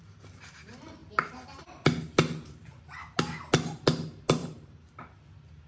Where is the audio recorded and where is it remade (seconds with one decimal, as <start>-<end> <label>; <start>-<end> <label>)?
0.0-4.4 recorded; 4.4-5.0 remade; 5.0-5.7 recorded